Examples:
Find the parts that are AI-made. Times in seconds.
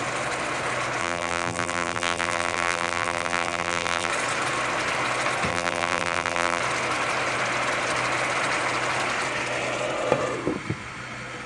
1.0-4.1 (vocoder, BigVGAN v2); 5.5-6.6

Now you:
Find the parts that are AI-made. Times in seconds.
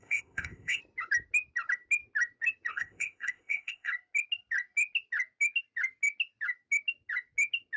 0.0-0.8 (codec, ZipCodec); 2.7-3.9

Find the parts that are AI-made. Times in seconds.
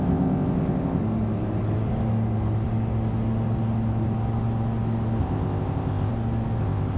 0.0-1.0 (codec, ZipCodec); 5.2-6.1; 6.6-7.0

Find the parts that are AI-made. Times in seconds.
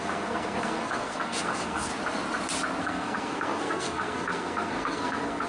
0.0-1.9 (codec, SNAC); 2.8-5.5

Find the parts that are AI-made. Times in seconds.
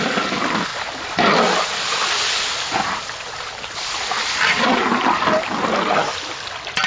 none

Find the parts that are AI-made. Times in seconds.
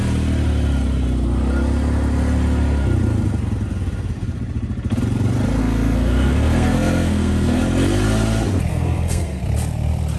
5.6-7.6 (codec, SNAC); 8.7-9.4